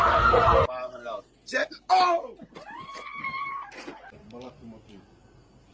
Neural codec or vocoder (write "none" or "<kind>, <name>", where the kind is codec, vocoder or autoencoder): none